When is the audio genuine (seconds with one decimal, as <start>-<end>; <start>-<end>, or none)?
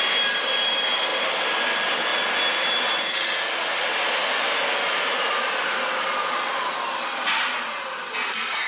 0.0-8.7